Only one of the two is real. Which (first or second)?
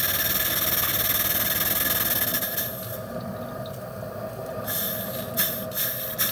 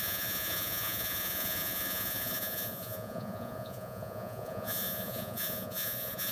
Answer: first